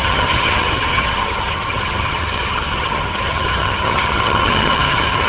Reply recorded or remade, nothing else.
remade